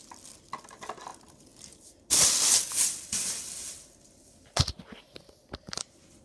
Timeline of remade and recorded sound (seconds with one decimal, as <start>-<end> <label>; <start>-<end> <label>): 0.0-6.2 recorded